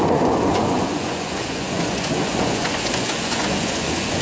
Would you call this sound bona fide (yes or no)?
no